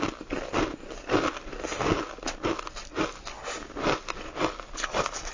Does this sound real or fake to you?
real